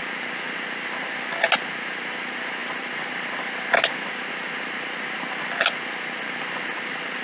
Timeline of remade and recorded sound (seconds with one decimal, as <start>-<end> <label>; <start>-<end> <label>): 0.0-7.2 recorded